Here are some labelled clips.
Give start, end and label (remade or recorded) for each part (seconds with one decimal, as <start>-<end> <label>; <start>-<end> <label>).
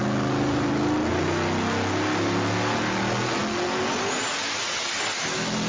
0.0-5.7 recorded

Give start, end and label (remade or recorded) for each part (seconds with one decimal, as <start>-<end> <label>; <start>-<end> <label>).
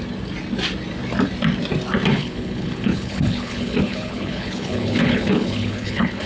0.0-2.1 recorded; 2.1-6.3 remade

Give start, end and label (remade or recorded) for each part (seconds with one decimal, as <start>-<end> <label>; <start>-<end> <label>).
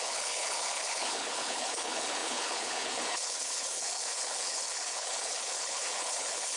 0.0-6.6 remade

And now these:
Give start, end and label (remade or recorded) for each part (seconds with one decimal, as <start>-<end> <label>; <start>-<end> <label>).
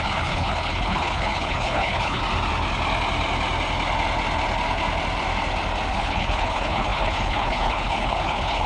0.0-2.2 remade; 2.2-5.9 recorded; 5.9-8.7 remade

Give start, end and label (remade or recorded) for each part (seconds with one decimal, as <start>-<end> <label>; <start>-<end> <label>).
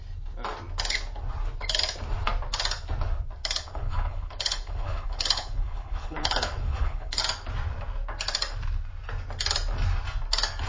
0.0-3.4 recorded; 3.4-7.2 remade; 7.2-10.7 recorded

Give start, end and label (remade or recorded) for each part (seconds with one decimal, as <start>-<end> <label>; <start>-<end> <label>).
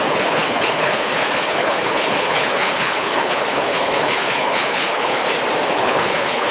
0.0-5.2 remade; 5.2-5.7 recorded; 5.7-6.5 remade